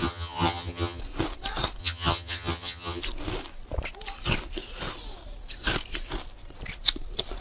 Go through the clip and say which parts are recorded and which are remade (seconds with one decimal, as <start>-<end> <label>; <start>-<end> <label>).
0.0-1.0 remade; 1.0-1.8 recorded; 1.8-3.0 remade; 3.0-7.4 recorded